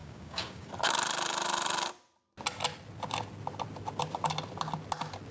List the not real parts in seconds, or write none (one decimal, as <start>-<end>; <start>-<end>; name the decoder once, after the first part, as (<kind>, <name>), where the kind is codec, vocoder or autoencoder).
0.0-0.7 (codec, DAC)